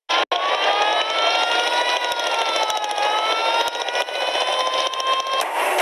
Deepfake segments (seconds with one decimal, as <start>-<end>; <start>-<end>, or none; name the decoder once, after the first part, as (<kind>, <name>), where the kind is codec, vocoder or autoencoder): none